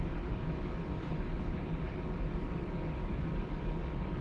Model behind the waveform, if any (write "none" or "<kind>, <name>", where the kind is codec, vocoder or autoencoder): codec, DAC